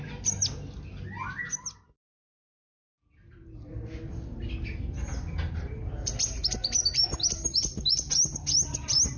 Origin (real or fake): real